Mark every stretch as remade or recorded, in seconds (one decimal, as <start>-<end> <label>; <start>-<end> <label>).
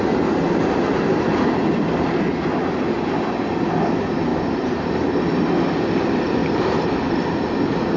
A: 0.0-4.3 recorded; 4.3-4.8 remade; 4.8-6.4 recorded; 6.4-7.1 remade; 7.1-8.0 recorded